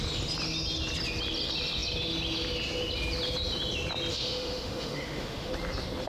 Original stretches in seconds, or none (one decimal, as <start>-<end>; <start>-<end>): 0.0-4.1; 5.5-6.1